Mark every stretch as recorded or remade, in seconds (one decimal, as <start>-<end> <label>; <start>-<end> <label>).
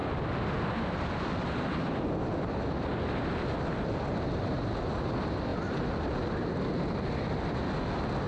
0.0-2.6 remade; 2.6-8.3 recorded